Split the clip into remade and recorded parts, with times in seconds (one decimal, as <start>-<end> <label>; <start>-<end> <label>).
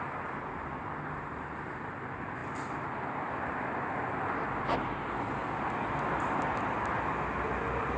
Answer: 0.0-8.0 recorded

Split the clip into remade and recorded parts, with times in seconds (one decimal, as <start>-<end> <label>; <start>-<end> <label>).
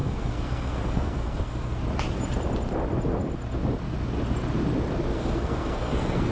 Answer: 0.0-1.8 remade; 1.8-5.1 recorded; 5.1-6.3 remade